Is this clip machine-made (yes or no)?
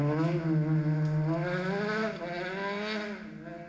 no